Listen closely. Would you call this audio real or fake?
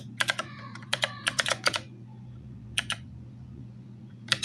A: fake